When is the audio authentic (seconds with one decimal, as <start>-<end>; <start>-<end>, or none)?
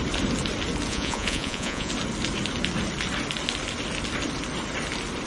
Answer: 0.0-0.9; 1.9-5.3